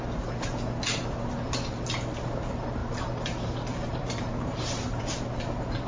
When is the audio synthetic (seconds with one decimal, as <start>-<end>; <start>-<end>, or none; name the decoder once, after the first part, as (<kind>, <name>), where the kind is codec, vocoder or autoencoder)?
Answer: 2.8-5.0 (vocoder, BigVGAN v2)